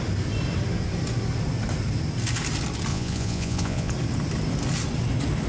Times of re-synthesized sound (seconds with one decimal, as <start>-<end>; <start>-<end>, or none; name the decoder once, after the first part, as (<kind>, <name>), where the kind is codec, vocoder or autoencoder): 2.9-3.9 (vocoder, Vocos)